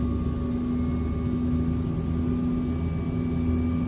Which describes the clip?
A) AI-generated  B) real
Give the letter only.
B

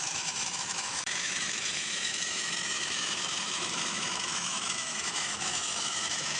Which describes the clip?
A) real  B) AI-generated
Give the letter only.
B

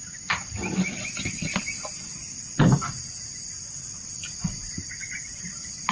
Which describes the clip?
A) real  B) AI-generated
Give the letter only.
A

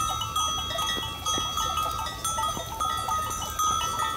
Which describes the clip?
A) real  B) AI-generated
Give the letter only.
A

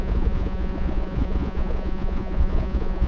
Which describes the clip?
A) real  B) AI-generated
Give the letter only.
B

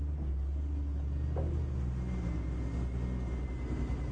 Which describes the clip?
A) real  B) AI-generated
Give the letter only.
A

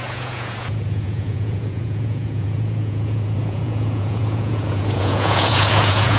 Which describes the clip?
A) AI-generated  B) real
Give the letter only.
A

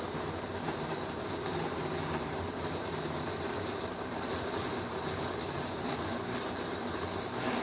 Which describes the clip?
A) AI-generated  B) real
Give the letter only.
A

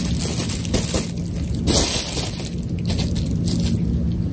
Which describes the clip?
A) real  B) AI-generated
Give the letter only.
A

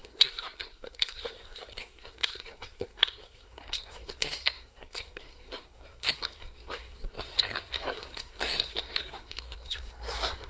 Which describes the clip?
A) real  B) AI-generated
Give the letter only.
B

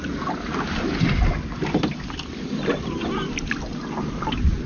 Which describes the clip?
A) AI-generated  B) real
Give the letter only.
B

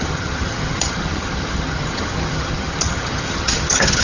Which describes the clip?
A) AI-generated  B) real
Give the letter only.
A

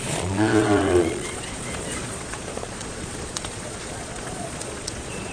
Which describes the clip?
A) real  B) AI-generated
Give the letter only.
B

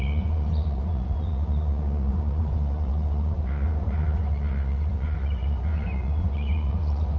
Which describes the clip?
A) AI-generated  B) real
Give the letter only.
A